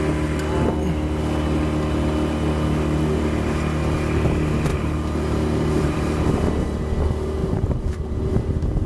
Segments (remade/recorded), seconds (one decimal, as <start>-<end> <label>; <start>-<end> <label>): 0.0-4.7 recorded; 4.7-6.5 remade; 6.5-7.4 recorded; 7.4-8.4 remade; 8.4-8.9 recorded